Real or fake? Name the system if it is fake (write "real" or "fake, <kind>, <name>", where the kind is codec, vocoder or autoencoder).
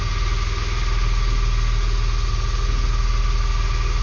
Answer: real